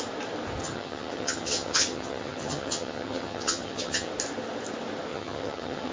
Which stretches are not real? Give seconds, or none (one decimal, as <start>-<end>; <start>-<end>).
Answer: 0.6-4.1; 5.1-5.9